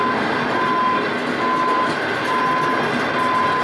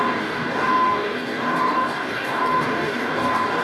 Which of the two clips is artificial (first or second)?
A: second